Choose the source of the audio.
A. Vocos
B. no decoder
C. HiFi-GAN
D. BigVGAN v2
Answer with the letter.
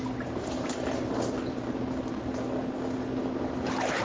B